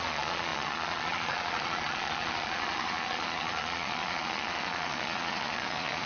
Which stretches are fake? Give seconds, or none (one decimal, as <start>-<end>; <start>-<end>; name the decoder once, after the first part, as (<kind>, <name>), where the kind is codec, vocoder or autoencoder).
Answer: 0.0-6.1 (vocoder, Vocos)